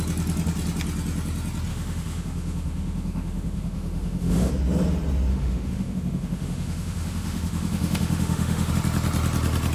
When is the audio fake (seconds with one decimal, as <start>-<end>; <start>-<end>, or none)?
1.7-4.5; 5.3-8.7